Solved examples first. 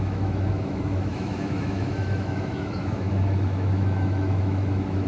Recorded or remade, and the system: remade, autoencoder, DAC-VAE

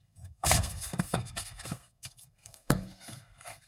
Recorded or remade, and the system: remade, codec, SNAC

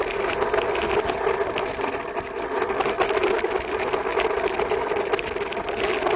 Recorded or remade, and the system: recorded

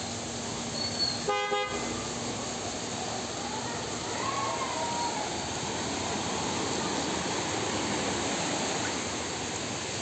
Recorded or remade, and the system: recorded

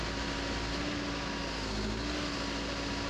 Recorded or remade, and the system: recorded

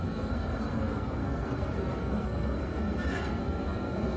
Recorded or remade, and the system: remade, codec, SNAC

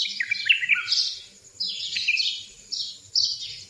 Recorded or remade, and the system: recorded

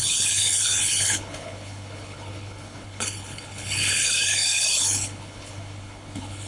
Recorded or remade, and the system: remade, codec, HILCodec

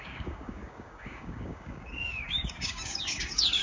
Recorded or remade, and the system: remade, codec, DAC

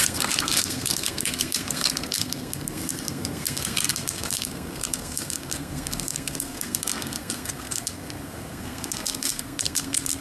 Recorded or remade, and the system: remade, codec, SNAC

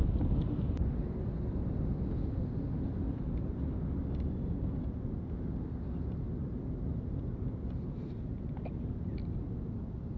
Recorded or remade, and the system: recorded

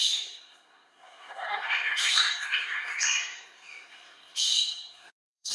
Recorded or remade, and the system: remade, codec, SNAC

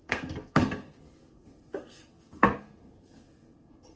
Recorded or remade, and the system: remade, codec, SNAC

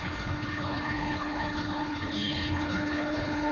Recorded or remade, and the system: remade, codec, HILCodec